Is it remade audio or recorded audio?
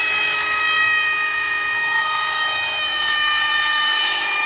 remade